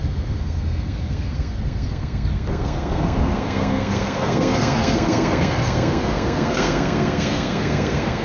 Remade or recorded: remade